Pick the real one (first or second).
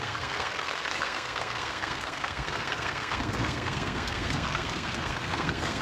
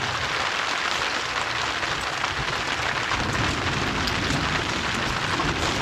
second